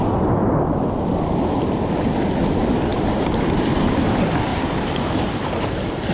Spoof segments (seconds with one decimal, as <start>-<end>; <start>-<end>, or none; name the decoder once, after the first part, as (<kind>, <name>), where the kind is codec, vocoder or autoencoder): 2.9-3.8 (vocoder, BigVGAN v2); 4.5-5.6